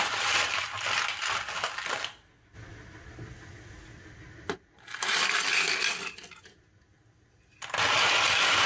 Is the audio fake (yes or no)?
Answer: no